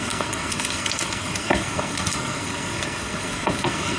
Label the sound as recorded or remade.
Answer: remade